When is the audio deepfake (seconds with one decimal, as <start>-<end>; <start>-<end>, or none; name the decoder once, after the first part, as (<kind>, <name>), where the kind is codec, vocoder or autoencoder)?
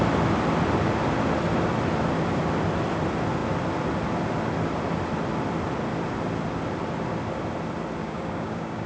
8.0-8.9 (codec, DAC)